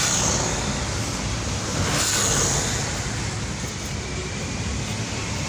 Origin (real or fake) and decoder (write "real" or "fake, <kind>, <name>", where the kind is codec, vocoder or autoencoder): real